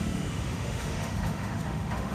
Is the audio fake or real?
fake